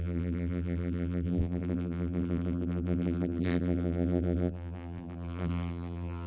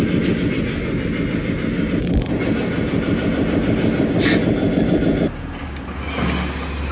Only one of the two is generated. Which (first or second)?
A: first